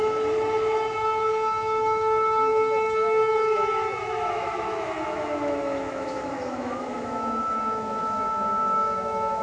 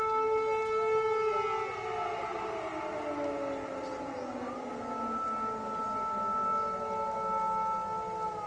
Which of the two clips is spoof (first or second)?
first